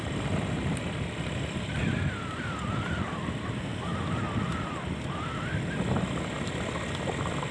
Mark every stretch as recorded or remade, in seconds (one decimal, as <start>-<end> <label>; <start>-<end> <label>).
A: 0.0-7.5 recorded